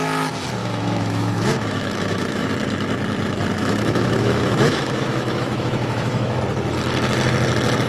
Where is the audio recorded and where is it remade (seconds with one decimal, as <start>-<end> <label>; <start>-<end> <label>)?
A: 0.0-0.6 recorded; 0.6-2.5 remade; 2.5-3.6 recorded; 3.6-6.4 remade; 6.4-7.9 recorded